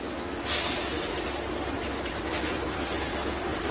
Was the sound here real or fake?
real